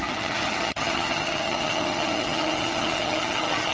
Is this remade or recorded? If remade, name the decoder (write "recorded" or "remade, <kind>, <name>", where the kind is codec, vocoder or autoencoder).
remade, vocoder, HiFi-GAN